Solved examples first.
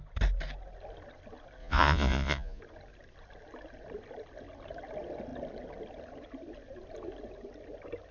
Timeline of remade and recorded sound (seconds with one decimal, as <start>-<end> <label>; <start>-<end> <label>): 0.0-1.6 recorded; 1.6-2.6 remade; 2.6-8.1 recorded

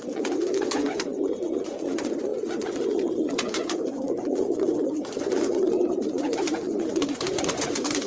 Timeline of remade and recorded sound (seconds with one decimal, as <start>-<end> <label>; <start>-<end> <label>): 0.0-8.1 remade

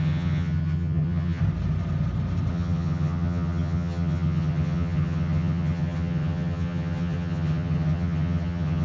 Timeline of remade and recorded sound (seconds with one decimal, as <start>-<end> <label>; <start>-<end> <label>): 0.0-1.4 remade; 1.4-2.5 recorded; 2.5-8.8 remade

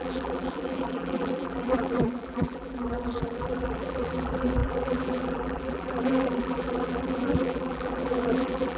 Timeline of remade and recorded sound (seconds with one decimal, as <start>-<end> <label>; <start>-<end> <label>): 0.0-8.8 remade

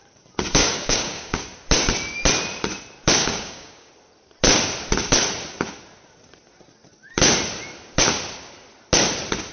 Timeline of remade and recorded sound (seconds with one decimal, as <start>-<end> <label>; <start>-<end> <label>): 0.0-0.6 recorded; 0.6-1.4 remade; 1.4-3.2 recorded; 3.2-3.9 remade; 3.9-9.5 recorded

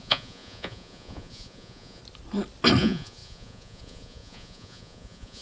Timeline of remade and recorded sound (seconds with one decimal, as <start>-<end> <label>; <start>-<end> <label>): 0.0-2.0 remade; 2.0-2.8 recorded; 2.8-5.4 remade

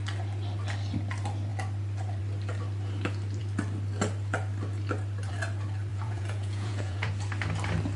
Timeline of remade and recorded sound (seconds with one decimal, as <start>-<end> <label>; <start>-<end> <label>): 0.0-5.9 recorded; 5.9-7.1 remade; 7.1-8.0 recorded